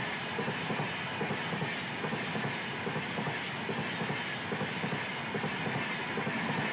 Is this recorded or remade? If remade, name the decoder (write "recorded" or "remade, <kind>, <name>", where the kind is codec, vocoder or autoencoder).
recorded